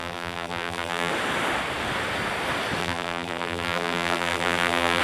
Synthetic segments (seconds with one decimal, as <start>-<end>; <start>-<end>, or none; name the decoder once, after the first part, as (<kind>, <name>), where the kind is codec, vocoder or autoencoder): 0.0-1.1 (vocoder, BigVGAN v2); 2.8-5.0